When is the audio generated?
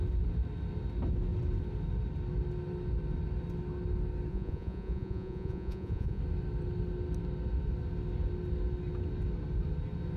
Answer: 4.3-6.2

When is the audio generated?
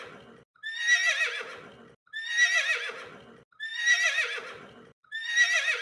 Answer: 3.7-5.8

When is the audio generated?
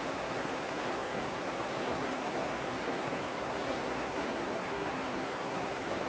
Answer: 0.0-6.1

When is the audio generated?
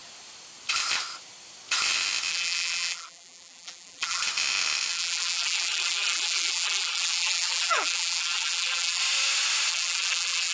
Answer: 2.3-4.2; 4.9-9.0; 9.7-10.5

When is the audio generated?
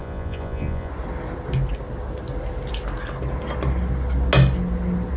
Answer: 0.0-0.9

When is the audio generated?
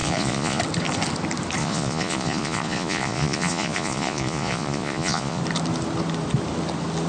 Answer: 0.0-0.6; 1.6-5.4